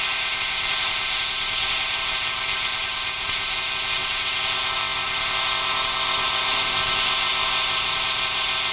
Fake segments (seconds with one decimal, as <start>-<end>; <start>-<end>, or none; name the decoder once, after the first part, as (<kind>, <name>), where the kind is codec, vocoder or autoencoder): 0.0-8.7 (codec, ZipCodec)